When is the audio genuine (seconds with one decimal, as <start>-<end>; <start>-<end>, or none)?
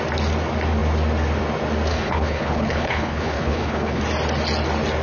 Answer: 0.0-1.9; 4.0-5.0